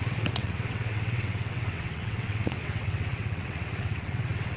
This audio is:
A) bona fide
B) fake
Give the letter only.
B